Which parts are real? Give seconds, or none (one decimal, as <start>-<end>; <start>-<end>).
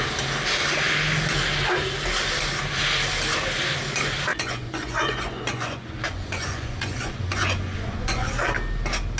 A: 0.0-4.3; 8.3-9.2